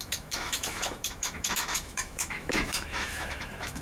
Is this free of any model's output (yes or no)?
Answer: no